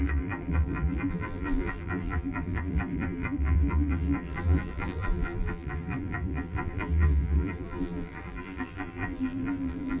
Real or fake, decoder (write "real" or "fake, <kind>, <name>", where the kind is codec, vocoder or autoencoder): fake, vocoder, BigVGAN v2